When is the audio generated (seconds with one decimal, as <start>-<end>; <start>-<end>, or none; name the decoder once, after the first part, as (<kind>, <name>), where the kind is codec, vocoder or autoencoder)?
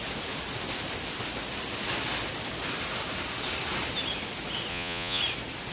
4.7-5.2 (vocoder, Vocos)